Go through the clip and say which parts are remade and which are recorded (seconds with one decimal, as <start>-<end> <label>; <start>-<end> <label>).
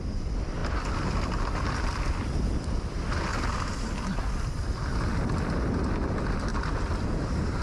0.0-0.6 remade; 0.6-1.7 recorded; 1.7-3.3 remade; 3.3-5.8 recorded; 5.8-6.5 remade; 6.5-7.6 recorded